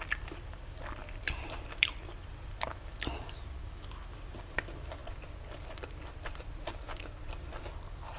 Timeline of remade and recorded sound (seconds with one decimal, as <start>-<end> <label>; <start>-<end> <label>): 0.0-1.0 recorded; 1.0-2.9 remade; 2.9-5.0 recorded; 5.0-7.5 remade; 7.5-8.2 recorded